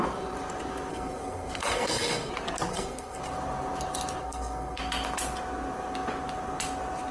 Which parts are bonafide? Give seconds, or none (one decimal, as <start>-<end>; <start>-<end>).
0.0-0.9; 2.3-2.7; 3.2-4.2; 4.8-7.1